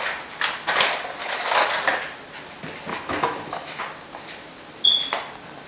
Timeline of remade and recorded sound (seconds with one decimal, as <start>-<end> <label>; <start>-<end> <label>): 0.0-1.2 recorded; 1.2-1.7 remade; 1.7-2.9 recorded; 2.9-3.8 remade; 3.8-5.7 recorded